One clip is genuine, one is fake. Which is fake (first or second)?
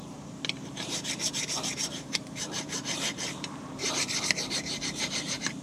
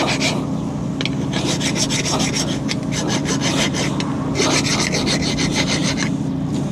first